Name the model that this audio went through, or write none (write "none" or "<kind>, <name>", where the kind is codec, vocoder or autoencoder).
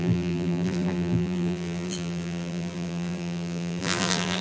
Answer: vocoder, BigVGAN v2